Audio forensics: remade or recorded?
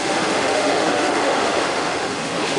remade